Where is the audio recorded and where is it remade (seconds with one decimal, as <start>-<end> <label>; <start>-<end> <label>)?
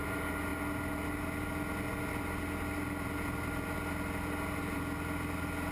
0.0-5.7 recorded